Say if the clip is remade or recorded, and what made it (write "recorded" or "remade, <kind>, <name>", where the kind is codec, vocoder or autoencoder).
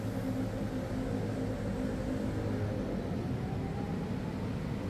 recorded